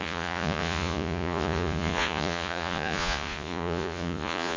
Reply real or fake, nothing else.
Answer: fake